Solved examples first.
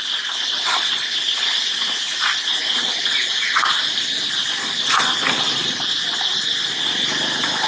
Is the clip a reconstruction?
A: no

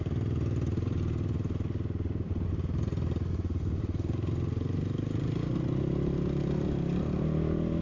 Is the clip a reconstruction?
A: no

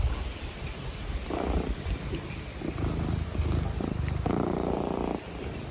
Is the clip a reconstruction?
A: no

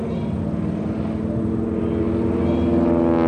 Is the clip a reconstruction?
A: no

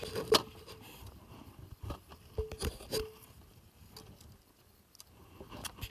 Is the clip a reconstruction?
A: no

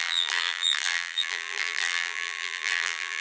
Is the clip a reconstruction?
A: yes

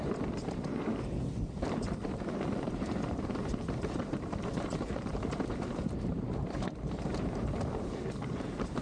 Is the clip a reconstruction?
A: yes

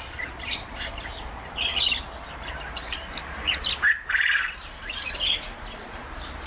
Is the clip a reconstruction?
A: no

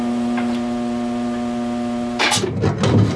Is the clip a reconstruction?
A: no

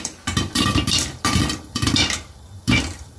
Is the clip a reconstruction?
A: yes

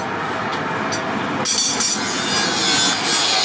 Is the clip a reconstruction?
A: no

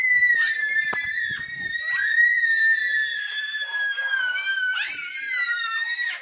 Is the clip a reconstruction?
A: yes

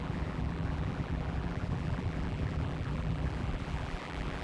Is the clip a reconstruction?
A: yes